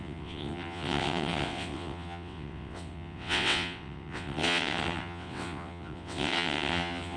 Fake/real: fake